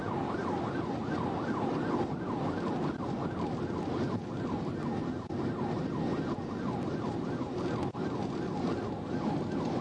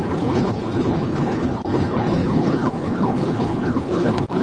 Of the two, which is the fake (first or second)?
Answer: second